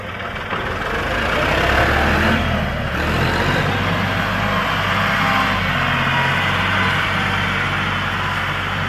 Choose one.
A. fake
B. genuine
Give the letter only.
B